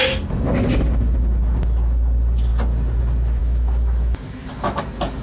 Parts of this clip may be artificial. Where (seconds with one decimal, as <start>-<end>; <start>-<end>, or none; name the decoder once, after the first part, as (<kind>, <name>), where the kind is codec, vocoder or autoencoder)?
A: 3.4-4.8 (autoencoder, DAC-VAE)